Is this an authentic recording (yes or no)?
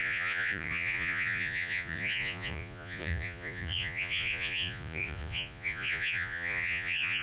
no